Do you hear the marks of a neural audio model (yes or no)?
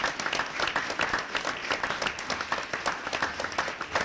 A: no